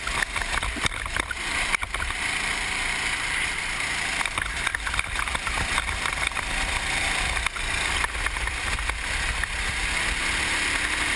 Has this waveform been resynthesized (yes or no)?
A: yes